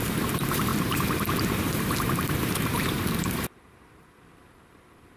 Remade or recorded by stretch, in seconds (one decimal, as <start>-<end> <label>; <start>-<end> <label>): 0.0-5.2 remade